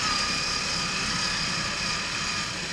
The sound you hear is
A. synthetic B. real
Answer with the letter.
B